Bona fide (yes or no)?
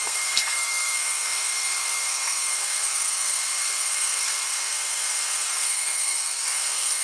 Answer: no